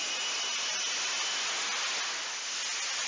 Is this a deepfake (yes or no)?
no